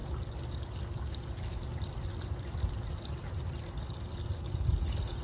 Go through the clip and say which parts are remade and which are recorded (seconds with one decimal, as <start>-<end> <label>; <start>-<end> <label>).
0.0-5.2 recorded